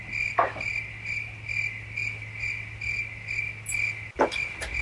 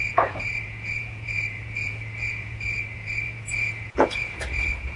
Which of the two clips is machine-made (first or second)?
second